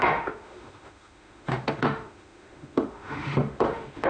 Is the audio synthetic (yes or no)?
yes